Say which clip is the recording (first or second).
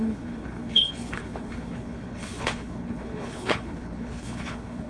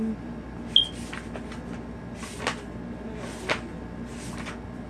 second